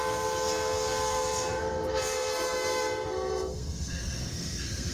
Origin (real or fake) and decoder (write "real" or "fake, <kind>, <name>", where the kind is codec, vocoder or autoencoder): fake, codec, SNAC